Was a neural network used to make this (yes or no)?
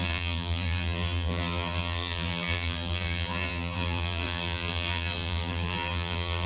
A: yes